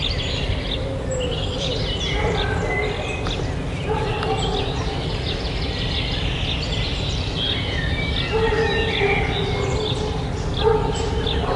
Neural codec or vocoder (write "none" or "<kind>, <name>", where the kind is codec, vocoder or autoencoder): none